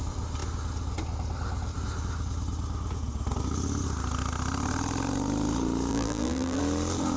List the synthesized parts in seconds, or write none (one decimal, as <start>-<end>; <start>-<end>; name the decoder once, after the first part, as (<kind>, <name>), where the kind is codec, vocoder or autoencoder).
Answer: 5.9-6.6 (vocoder, BigVGAN v2)

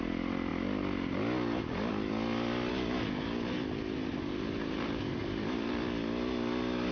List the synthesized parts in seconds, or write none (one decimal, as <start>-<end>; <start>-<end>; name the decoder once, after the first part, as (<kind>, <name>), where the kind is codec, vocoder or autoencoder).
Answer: 4.1-5.7 (vocoder, BigVGAN v2)